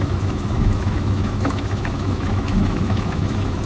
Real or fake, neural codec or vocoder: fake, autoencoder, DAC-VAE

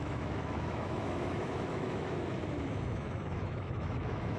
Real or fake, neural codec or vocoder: fake, autoencoder, DAC-VAE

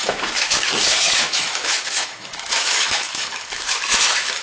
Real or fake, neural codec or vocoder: fake, autoencoder, DAC-VAE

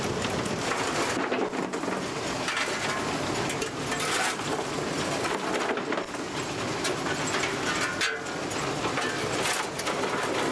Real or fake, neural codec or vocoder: real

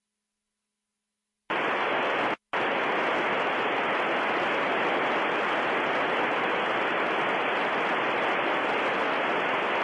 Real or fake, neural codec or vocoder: real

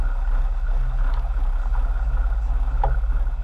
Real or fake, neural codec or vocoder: real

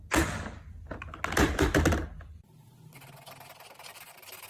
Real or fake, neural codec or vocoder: real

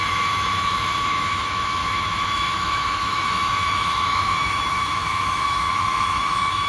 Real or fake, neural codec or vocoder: fake, autoencoder, DAC-VAE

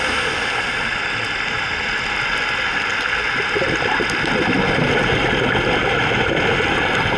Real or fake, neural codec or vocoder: real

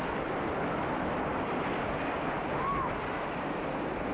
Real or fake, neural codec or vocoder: real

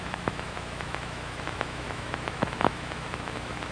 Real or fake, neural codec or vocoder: fake, autoencoder, DAC-VAE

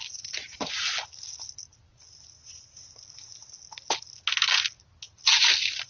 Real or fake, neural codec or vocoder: real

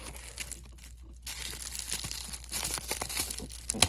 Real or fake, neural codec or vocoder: real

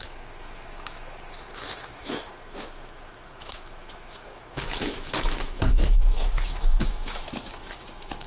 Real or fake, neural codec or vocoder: fake, autoencoder, DAC-VAE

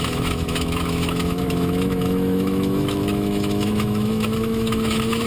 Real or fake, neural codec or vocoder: fake, autoencoder, DAC-VAE